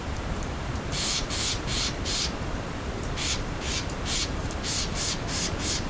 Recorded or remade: remade